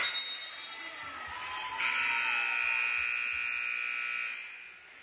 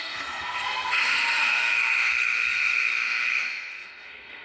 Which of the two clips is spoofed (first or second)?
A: second